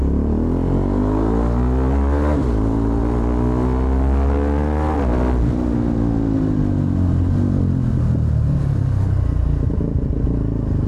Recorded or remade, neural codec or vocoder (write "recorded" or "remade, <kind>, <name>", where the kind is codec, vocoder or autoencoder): recorded